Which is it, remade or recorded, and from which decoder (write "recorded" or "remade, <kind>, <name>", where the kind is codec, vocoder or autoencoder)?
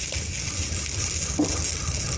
recorded